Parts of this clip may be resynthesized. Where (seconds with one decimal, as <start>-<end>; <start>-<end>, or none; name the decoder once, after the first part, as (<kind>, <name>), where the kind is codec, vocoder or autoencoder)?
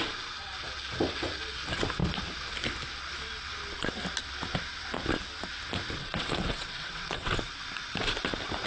6.0-7.5 (vocoder, WaveNeXt)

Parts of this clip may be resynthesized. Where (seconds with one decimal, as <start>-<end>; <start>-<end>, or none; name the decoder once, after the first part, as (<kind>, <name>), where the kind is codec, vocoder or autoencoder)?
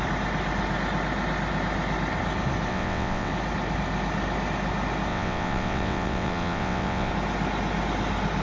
2.7-3.3 (vocoder, WaveNeXt); 5.1-7.1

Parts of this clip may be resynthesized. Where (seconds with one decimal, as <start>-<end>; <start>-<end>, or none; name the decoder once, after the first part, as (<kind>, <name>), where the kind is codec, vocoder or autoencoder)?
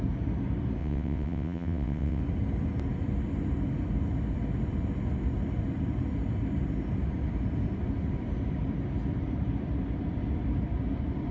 0.8-2.2 (vocoder, WaveNeXt)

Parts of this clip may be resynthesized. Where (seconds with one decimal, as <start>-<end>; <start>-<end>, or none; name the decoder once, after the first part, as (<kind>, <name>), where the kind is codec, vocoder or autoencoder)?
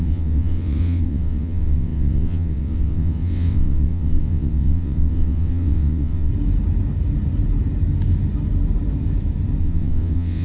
0.0-6.3 (vocoder, WaveNeXt); 9.6-10.4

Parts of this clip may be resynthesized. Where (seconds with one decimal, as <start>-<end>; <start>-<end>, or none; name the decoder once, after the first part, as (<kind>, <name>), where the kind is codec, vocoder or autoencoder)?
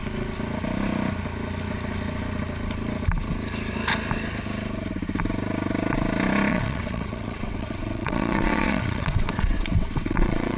6.5-10.6 (vocoder, WaveNeXt)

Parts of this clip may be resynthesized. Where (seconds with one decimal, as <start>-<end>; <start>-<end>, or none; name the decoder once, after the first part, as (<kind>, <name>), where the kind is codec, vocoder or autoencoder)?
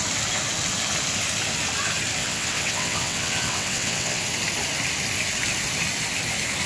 2.2-4.2 (vocoder, WaveNeXt)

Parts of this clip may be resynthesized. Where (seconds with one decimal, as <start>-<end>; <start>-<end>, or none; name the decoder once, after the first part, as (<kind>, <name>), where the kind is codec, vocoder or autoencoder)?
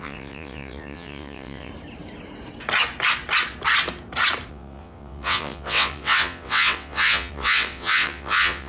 0.0-1.7 (vocoder, WaveNeXt); 4.5-8.7